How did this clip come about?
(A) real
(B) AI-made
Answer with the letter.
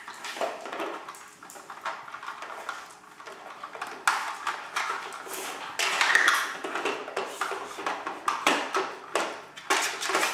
A